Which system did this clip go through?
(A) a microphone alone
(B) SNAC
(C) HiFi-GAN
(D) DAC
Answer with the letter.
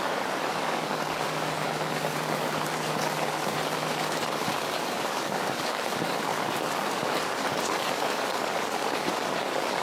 D